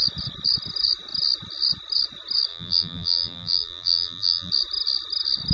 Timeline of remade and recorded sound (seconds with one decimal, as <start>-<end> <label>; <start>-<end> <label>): 0.0-2.5 recorded; 2.5-4.5 remade; 4.5-5.5 recorded